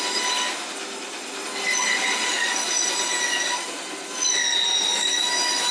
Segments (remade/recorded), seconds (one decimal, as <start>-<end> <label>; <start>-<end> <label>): 0.0-4.9 recorded; 4.9-5.7 remade